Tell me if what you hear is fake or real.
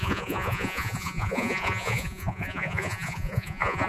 fake